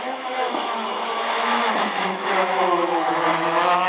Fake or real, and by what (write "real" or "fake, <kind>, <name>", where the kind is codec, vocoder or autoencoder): fake, autoencoder, DAC-VAE